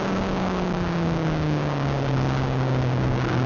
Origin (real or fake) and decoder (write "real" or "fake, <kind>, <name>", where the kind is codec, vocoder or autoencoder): fake, codec, DAC